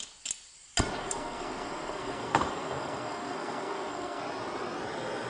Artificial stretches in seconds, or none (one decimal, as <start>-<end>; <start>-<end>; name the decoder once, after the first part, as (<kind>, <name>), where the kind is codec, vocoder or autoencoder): 1.0-4.2 (codec, SNAC)